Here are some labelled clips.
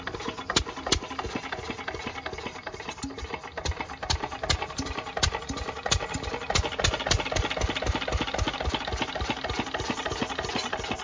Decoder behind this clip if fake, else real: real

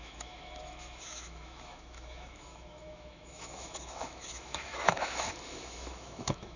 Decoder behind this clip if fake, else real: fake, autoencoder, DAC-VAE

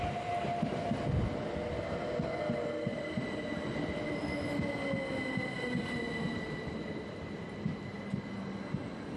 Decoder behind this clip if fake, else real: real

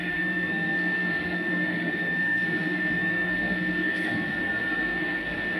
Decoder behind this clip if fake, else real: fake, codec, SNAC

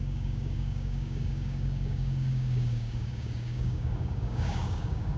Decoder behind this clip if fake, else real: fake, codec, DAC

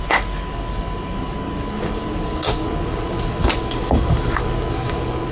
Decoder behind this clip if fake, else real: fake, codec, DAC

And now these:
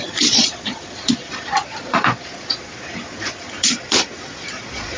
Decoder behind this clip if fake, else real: fake, vocoder, Vocos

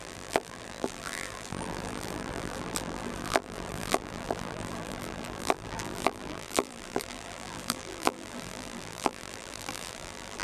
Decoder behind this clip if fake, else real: fake, vocoder, BigVGAN v2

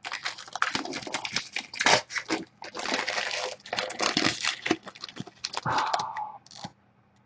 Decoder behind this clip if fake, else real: real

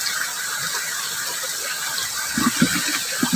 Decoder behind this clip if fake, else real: real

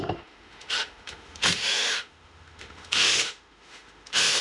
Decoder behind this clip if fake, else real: fake, autoencoder, DAC-VAE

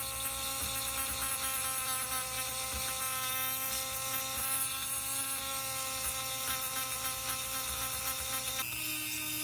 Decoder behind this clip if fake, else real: real